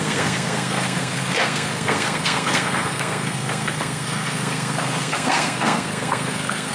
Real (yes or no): no